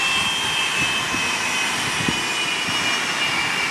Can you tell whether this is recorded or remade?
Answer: recorded